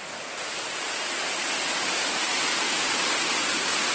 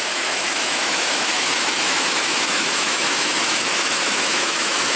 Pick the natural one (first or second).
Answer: first